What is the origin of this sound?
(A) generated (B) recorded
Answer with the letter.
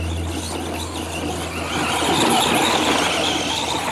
B